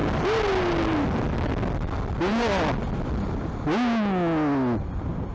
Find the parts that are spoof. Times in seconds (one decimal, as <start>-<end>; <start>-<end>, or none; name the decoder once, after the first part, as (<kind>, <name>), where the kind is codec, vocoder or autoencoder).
none